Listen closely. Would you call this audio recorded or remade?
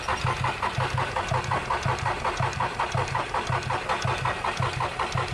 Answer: recorded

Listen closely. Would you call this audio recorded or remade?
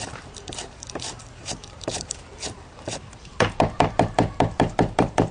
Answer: remade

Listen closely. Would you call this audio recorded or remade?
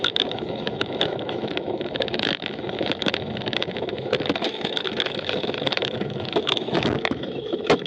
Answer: remade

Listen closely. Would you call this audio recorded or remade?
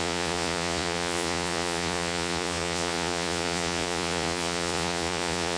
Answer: remade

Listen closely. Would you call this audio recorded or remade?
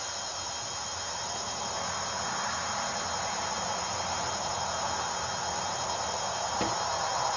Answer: recorded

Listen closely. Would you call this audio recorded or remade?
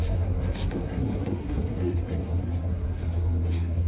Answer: remade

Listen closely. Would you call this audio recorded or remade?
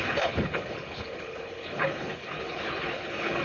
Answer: remade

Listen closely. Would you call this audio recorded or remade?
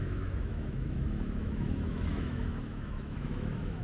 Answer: remade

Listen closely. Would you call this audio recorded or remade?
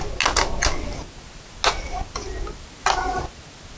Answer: recorded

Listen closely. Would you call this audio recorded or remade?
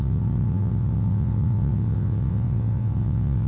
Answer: remade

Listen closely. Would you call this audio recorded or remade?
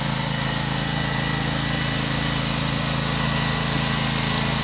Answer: recorded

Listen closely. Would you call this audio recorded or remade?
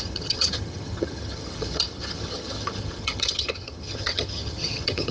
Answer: remade